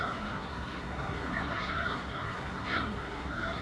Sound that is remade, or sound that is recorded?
remade